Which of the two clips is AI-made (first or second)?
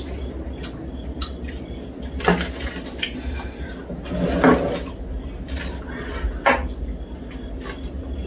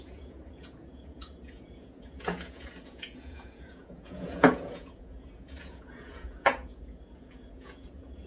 second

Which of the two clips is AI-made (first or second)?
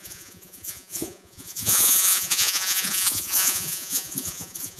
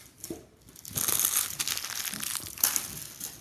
first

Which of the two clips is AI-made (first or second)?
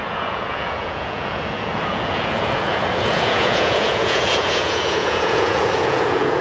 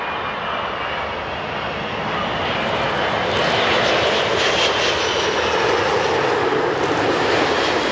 first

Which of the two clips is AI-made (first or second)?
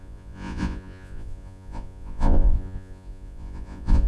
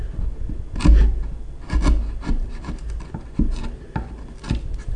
first